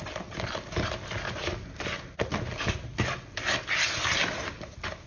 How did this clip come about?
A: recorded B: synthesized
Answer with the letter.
A